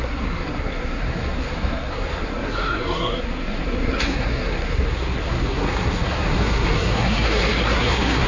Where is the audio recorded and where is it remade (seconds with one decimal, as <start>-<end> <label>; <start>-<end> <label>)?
0.0-8.3 remade